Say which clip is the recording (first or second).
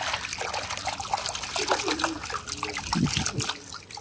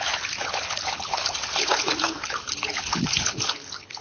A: first